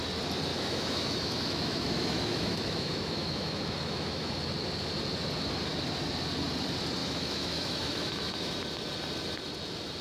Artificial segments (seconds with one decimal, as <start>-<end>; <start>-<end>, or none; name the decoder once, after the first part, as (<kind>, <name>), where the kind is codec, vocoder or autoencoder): 0.5-4.3 (autoencoder, DAC-VAE); 7.0-8.5